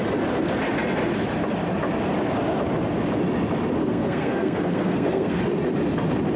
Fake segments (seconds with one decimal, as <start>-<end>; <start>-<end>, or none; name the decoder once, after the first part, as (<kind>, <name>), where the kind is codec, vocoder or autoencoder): 3.8-5.4 (codec, SNAC)